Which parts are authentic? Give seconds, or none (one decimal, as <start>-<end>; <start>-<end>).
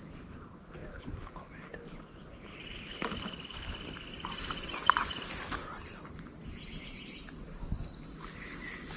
0.0-0.8; 5.1-9.0